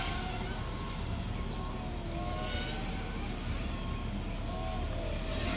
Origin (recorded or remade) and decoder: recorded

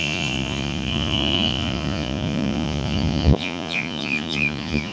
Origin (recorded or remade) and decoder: remade, vocoder, Vocos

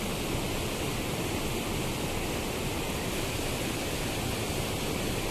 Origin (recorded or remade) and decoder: recorded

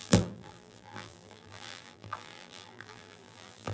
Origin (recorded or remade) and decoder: remade, vocoder, BigVGAN v2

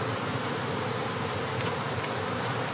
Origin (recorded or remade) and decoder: remade, vocoder, BigVGAN v2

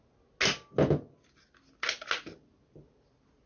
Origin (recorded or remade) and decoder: recorded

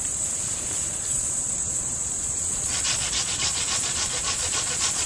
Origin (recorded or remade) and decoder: remade, vocoder, Vocos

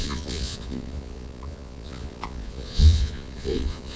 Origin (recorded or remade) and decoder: remade, vocoder, Vocos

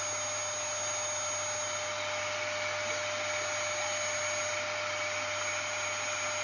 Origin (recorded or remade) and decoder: recorded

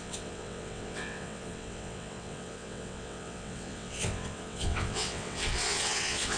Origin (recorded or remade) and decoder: remade, vocoder, WaveNeXt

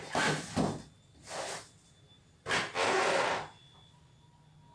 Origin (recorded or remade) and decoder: recorded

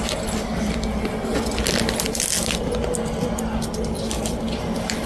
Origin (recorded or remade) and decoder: recorded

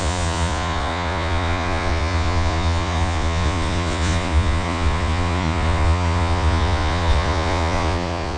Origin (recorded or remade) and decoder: remade, vocoder, Vocos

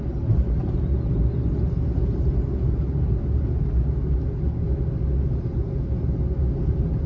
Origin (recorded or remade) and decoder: recorded